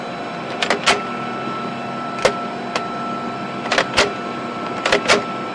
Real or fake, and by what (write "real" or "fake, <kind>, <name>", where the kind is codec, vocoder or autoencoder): real